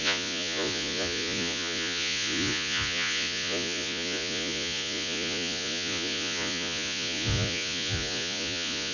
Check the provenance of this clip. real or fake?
fake